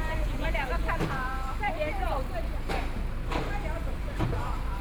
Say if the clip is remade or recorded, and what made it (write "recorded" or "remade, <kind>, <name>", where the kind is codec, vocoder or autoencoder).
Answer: remade, vocoder, BigVGAN v2